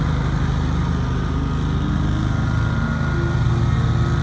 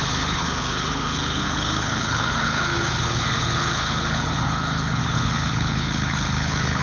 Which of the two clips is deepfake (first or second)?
second